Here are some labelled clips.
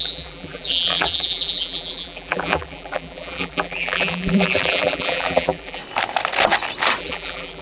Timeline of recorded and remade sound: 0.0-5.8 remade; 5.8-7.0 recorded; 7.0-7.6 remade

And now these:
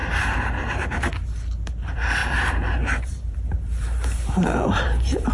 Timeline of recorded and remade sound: 0.0-1.1 remade; 1.1-2.2 recorded; 2.2-5.3 remade

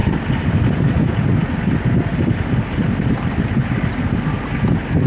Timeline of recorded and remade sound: 0.0-0.6 remade; 0.6-1.4 recorded; 1.4-4.5 remade; 4.5-5.1 recorded

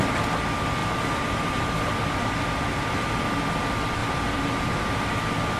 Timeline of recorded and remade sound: 0.0-0.8 recorded; 0.8-3.1 remade; 3.1-4.0 recorded; 4.0-5.1 remade; 5.1-5.6 recorded

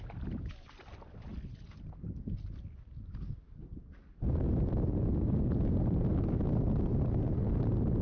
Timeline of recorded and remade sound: 0.0-8.0 recorded

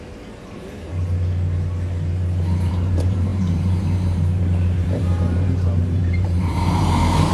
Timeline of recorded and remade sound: 0.0-0.9 remade; 0.9-2.7 recorded; 2.7-7.3 remade